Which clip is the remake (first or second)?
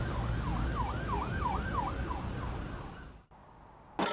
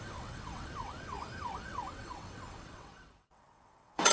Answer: second